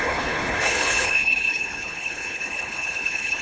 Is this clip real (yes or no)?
no